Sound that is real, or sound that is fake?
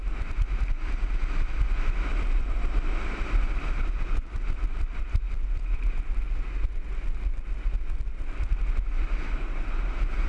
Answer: real